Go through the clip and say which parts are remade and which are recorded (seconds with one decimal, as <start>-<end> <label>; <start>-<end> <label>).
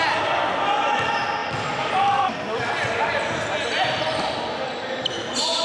0.0-5.6 recorded